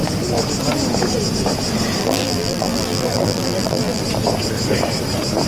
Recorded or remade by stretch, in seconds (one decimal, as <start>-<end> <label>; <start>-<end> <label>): 0.0-2.0 recorded; 2.0-4.0 remade; 4.0-5.5 recorded